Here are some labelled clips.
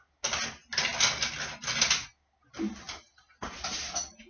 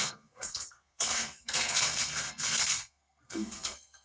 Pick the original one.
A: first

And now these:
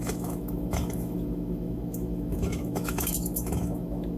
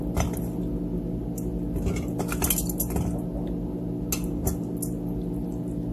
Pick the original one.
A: second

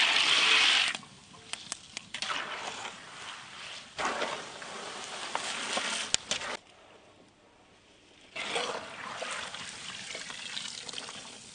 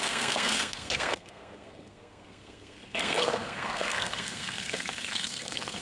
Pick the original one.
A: first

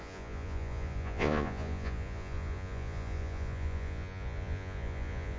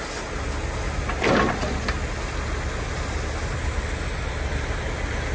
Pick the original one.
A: second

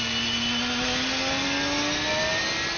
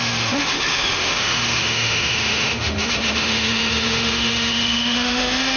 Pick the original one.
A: first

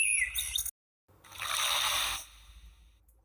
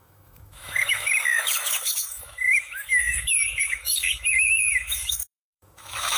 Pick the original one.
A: first